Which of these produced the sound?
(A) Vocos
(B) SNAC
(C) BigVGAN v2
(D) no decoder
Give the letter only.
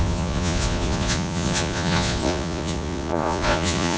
A